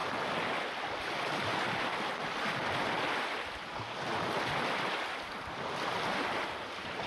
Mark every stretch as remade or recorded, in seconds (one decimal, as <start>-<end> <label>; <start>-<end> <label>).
0.0-7.1 recorded